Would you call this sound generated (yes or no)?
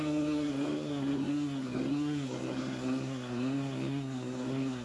yes